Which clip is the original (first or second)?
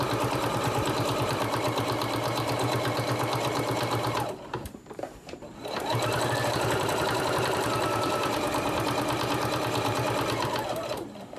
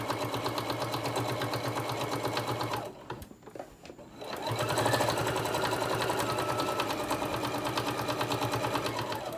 second